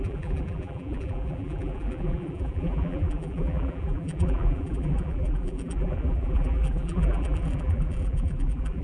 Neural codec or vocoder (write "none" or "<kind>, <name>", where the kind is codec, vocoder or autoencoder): vocoder, BigVGAN v2